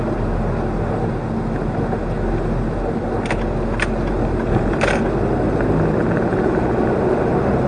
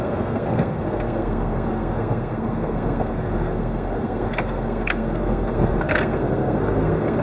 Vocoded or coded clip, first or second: second